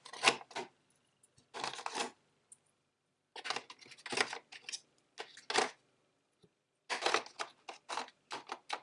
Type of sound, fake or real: real